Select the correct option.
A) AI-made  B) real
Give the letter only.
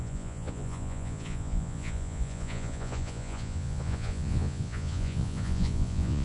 A